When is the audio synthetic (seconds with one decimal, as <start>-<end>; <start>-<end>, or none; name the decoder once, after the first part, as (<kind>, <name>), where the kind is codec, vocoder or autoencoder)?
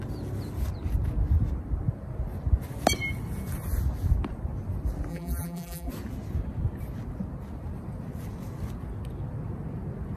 5.1-5.9 (vocoder, BigVGAN v2)